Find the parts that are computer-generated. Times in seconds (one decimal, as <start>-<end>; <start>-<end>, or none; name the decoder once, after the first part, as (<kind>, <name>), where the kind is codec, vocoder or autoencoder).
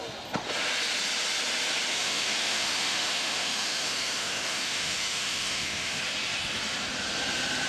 1.9-6.0 (autoencoder, DAC-VAE)